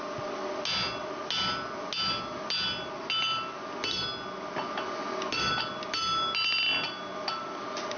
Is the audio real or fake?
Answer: real